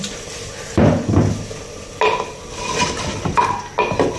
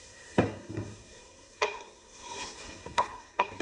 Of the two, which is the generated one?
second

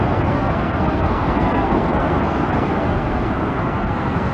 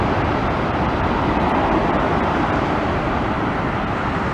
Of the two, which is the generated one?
first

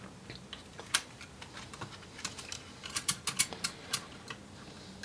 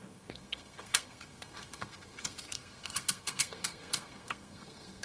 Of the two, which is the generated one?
second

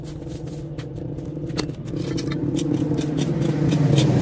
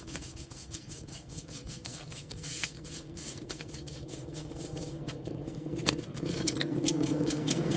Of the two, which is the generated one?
second